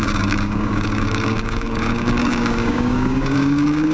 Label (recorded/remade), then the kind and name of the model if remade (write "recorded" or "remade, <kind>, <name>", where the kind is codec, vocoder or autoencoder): remade, codec, DAC